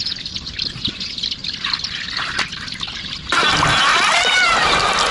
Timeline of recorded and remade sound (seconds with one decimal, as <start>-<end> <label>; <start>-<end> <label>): 0.0-1.4 remade; 1.4-3.5 recorded; 3.5-5.1 remade